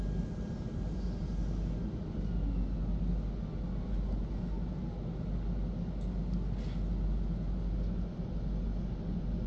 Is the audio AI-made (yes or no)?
no